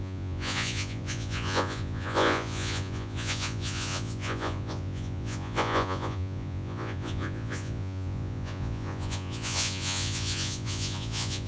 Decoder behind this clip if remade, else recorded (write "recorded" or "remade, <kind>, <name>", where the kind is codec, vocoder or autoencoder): remade, vocoder, Vocos